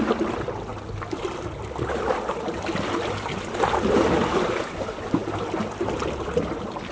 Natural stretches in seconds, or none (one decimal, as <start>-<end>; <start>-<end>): 0.0-6.9